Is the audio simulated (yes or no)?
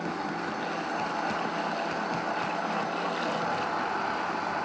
no